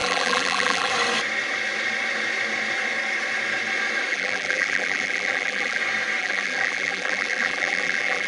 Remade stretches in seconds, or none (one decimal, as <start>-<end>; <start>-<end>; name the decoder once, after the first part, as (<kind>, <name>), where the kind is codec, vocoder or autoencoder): 0.0-0.9 (vocoder, BigVGAN v2); 4.1-5.8; 6.2-8.3